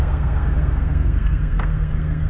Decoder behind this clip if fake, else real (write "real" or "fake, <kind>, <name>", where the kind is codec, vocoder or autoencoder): fake, codec, SNAC